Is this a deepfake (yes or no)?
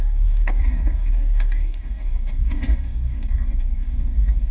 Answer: yes